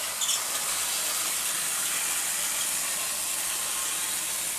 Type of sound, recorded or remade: recorded